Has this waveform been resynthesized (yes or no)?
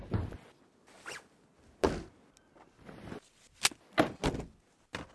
no